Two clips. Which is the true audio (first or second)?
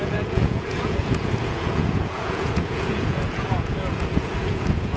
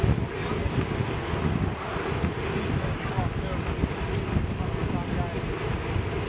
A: second